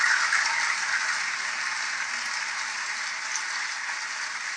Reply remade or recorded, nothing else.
recorded